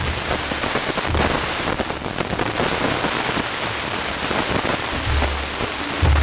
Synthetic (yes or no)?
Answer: no